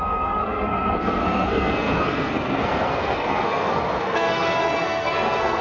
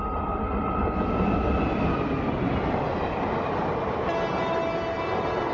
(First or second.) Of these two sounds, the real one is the second